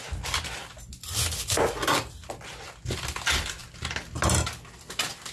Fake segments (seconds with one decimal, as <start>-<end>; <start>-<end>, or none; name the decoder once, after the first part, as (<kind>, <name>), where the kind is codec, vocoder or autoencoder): none